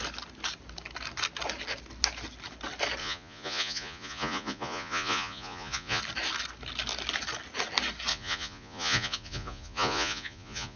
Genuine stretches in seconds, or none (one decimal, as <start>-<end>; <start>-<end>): 0.0-3.0; 6.0-8.1